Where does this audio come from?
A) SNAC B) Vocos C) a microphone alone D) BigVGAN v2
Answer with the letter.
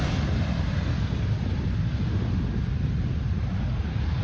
C